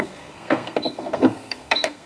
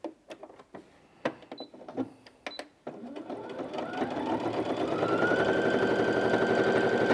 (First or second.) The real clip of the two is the second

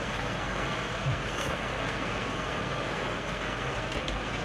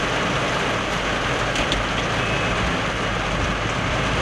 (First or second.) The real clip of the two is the second